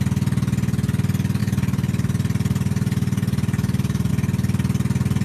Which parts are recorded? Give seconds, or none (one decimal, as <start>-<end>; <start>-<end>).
0.0-1.4; 4.1-5.2